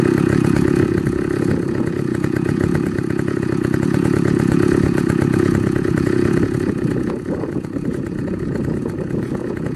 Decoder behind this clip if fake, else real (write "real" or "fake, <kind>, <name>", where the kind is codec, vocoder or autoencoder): fake, vocoder, Vocos